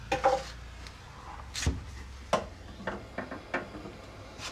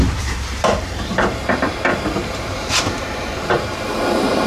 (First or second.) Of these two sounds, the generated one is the second